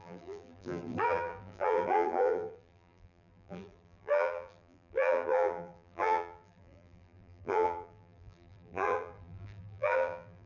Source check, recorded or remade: remade